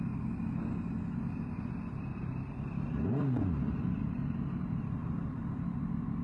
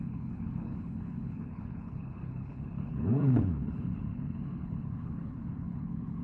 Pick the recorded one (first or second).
first